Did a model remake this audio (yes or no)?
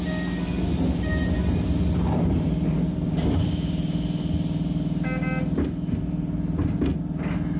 no